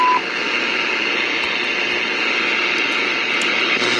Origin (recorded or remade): recorded